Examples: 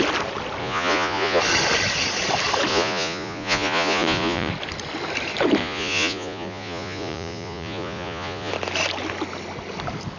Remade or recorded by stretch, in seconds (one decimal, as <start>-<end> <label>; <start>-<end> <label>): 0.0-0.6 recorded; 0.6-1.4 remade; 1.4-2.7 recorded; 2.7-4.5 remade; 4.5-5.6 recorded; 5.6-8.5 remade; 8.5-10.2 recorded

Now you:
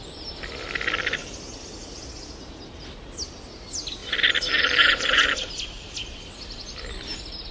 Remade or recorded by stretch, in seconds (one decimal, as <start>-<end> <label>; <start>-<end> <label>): 0.0-7.5 recorded

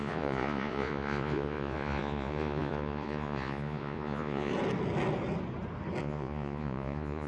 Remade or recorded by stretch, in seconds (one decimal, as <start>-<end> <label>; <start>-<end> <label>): 0.0-4.5 remade; 4.5-6.0 recorded; 6.0-7.3 remade

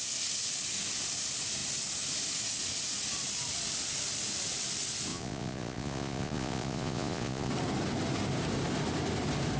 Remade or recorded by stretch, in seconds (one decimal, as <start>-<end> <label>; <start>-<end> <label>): 0.0-5.1 recorded; 5.1-7.5 remade; 7.5-9.6 recorded